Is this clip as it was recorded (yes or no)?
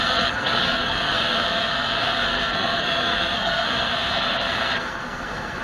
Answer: no